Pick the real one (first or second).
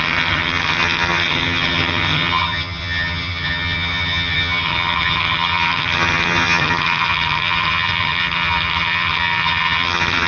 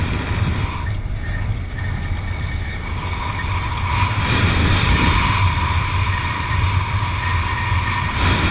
second